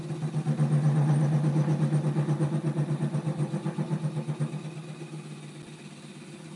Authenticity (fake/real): real